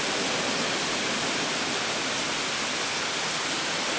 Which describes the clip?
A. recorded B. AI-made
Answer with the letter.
A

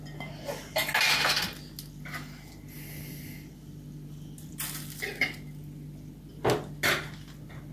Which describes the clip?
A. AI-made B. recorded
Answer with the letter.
B